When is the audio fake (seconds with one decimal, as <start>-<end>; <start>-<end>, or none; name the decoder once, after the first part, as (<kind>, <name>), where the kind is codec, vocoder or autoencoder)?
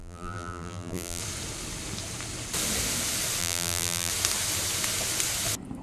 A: 0.0-1.2 (vocoder, BigVGAN v2); 3.4-4.1